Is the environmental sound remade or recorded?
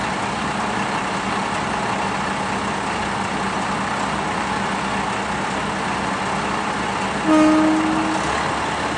recorded